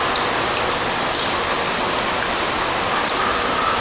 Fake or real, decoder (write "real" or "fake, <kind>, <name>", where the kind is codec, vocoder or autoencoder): real